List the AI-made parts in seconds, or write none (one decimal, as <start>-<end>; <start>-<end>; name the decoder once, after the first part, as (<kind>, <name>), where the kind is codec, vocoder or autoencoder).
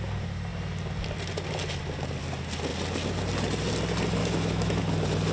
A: 4.2-4.8 (autoencoder, DAC-VAE)